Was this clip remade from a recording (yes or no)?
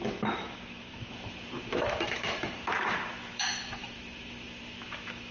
yes